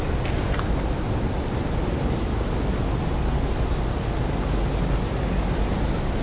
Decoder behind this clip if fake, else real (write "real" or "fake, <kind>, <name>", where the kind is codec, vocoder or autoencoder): real